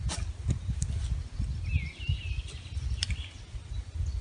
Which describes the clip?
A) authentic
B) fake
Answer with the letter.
A